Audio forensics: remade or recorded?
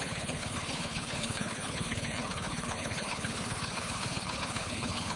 remade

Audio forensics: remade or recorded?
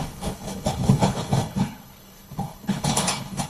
remade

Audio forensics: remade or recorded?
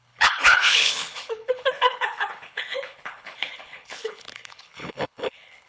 remade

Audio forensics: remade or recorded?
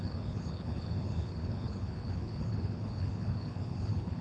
remade